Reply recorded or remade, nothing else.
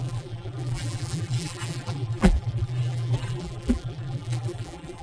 remade